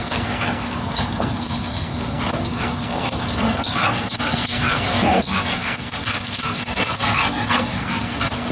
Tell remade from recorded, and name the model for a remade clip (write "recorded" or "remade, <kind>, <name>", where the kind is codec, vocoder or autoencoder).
remade, codec, SNAC